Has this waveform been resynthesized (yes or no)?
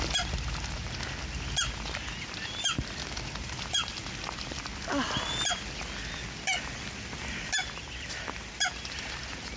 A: no